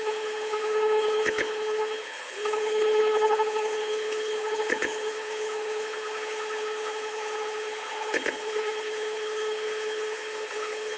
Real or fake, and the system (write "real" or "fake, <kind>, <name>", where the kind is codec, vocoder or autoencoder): fake, codec, HILCodec